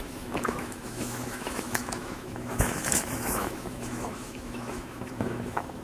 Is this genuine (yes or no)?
no